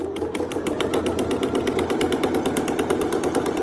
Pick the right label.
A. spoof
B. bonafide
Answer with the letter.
B